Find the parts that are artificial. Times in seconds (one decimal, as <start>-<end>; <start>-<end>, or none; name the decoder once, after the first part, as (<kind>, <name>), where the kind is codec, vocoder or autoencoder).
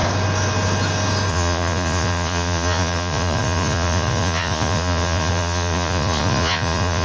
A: 1.3-7.0 (vocoder, Vocos)